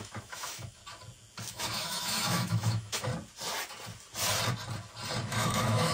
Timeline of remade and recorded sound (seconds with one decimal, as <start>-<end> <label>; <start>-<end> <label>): 0.0-0.8 remade; 0.8-1.5 recorded; 1.5-3.1 remade; 3.1-5.2 recorded; 5.2-5.9 remade